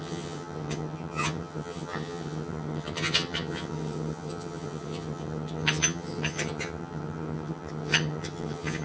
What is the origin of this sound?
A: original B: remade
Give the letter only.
B